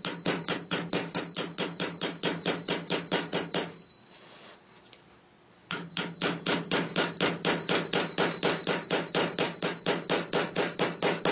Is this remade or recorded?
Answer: recorded